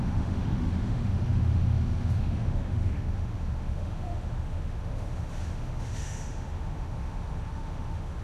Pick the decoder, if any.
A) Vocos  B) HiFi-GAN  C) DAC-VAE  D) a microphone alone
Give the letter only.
C